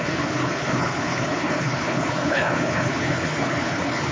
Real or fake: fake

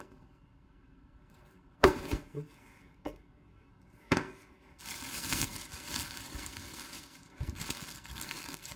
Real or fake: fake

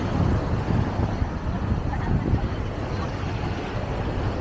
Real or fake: real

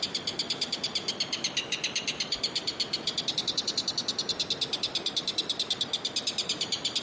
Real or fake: real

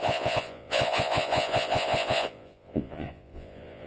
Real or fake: fake